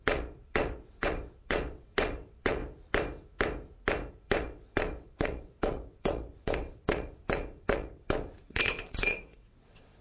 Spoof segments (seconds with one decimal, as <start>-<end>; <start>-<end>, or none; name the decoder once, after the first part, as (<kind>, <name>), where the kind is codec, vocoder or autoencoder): 0.0-2.6 (vocoder, WaveNeXt); 4.1-10.0